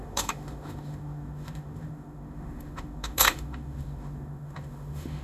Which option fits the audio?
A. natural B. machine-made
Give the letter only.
B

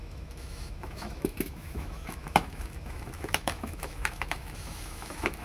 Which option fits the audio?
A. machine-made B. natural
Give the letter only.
A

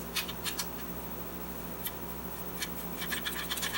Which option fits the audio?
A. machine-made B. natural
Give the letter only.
B